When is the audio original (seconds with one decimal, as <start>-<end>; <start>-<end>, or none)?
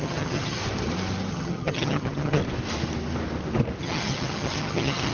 0.6-1.3; 2.4-3.8